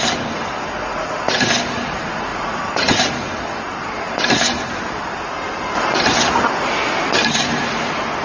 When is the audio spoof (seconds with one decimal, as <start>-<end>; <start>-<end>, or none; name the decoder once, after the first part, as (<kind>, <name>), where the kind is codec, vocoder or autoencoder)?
0.9-1.5 (vocoder, Vocos); 2.3-3.0